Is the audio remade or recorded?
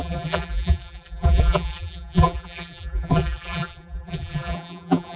remade